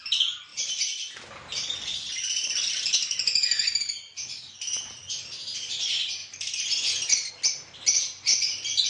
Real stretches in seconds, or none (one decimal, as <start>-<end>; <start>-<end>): 0.0-8.9

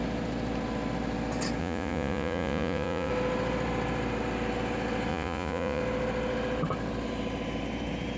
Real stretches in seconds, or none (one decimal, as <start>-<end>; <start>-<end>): 0.0-1.6; 3.1-5.1; 5.8-8.2

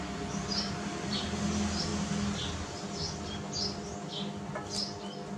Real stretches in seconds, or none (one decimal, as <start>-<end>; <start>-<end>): 0.0-5.4

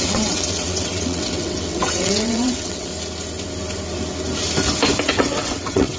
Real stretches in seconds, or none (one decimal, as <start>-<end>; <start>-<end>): 2.9-5.0

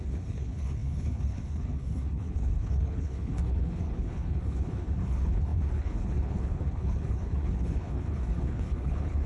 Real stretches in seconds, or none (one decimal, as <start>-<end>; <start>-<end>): none

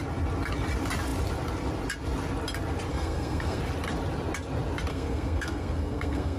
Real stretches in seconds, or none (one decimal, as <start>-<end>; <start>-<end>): 0.0-2.9; 3.6-4.9

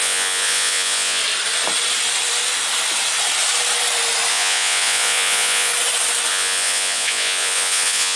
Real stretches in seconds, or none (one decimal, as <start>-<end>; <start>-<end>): 1.2-4.3; 5.7-6.3

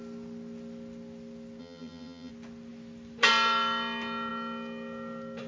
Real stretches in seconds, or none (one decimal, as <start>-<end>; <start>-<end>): 0.0-1.6; 2.3-5.5